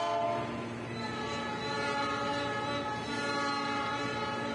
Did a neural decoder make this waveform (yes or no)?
no